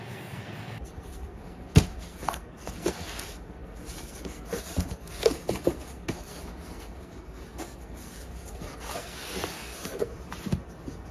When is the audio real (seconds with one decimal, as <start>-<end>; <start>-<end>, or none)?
10.1-11.1